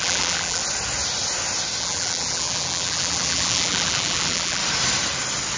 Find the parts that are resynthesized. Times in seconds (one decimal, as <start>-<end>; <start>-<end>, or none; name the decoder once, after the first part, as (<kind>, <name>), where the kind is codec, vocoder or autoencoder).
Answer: 0.0-0.6 (vocoder, BigVGAN v2); 1.8-4.6